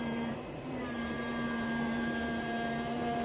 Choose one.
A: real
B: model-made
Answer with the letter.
B